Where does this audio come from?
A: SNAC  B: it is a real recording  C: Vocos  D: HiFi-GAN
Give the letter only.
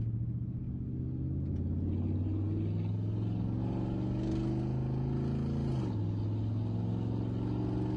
B